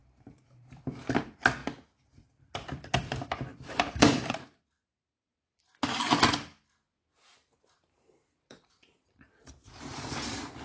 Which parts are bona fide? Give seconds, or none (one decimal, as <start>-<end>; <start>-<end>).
0.9-3.5; 5.6-7.3; 10.1-10.6